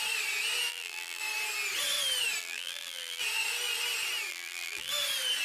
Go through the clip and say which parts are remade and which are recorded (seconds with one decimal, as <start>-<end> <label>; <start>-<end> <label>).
0.0-0.7 recorded; 0.7-1.2 remade; 1.2-2.4 recorded; 2.4-3.2 remade; 3.2-4.3 recorded; 4.3-4.9 remade; 4.9-5.4 recorded